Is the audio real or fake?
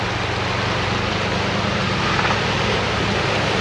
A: real